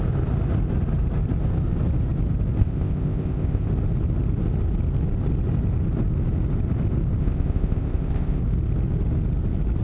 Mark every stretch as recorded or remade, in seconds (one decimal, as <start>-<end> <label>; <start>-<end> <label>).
0.0-2.6 recorded; 2.6-3.7 remade; 3.7-7.2 recorded; 7.2-8.4 remade; 8.4-9.8 recorded